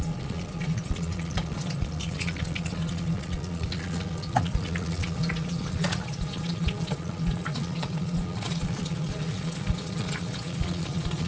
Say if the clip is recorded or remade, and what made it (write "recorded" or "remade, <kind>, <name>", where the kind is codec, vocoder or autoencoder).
remade, vocoder, Vocos